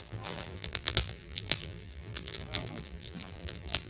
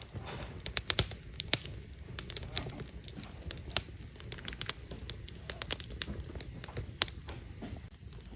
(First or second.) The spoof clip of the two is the first